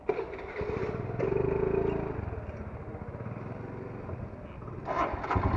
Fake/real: real